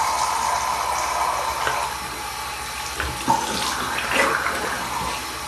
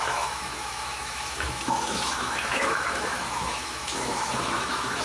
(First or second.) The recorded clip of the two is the first